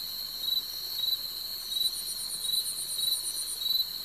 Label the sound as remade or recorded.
recorded